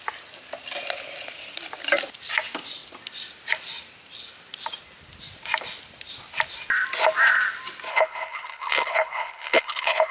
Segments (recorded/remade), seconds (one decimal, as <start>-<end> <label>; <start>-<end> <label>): 0.0-7.9 recorded; 7.9-10.1 remade

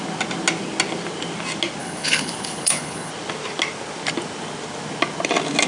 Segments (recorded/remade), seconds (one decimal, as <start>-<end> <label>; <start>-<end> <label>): 0.0-1.8 recorded; 1.8-3.1 remade; 3.1-5.7 recorded

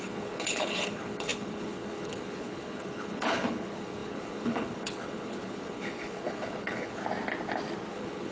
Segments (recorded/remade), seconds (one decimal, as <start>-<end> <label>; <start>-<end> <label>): 0.0-7.0 remade; 7.0-7.9 recorded; 7.9-8.3 remade

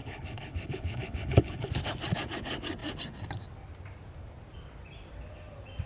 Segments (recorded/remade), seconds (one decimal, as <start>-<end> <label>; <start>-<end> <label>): 0.0-1.7 remade; 1.7-5.9 recorded

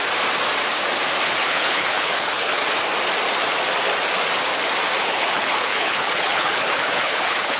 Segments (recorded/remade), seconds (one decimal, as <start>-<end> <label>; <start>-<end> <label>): 0.0-1.4 recorded; 1.4-2.6 remade; 2.6-5.0 recorded; 5.0-7.6 remade